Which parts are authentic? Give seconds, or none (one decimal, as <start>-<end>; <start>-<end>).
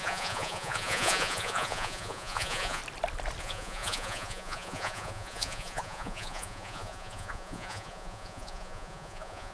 2.8-3.4